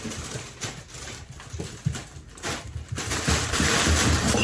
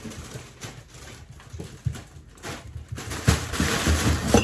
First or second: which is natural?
second